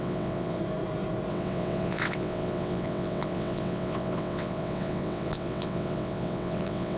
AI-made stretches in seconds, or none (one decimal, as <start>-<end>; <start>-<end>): 0.0-0.6; 1.3-7.0